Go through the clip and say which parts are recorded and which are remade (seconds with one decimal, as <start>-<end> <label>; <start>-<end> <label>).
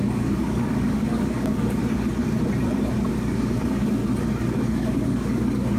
0.0-1.8 remade; 1.8-3.1 recorded; 3.1-4.0 remade; 4.0-4.5 recorded; 4.5-5.8 remade